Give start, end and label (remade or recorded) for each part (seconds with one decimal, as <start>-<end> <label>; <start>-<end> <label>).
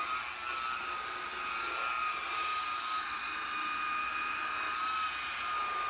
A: 0.0-5.9 recorded